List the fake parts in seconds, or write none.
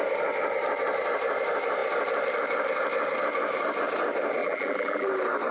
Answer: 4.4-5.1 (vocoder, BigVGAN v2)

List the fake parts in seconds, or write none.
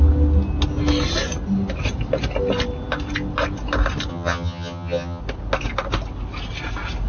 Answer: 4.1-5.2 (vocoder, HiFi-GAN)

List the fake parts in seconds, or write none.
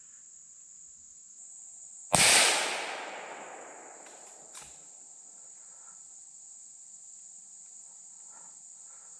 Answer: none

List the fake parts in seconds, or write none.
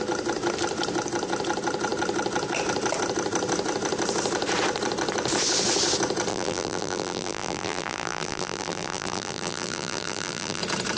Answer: 6.3-10.6 (vocoder, BigVGAN v2)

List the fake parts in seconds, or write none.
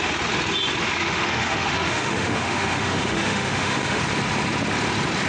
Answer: 1.0-4.0 (autoencoder, DAC-VAE)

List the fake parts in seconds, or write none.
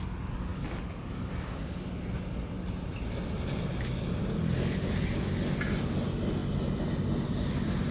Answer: 0.5-1.3 (codec, DAC)